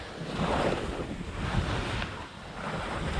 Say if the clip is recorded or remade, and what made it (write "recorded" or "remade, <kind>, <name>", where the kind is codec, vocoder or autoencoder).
recorded